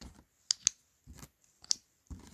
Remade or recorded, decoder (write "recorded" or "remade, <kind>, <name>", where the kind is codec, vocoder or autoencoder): recorded